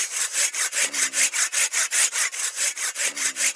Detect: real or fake real